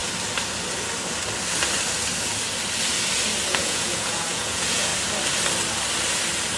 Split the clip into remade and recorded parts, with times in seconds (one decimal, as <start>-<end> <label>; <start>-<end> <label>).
0.0-3.5 recorded; 3.5-4.9 remade; 4.9-6.6 recorded